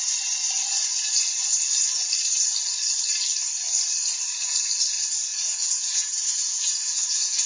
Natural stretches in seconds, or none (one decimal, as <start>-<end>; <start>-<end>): 0.0-5.3